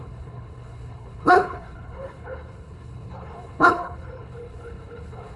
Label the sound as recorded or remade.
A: remade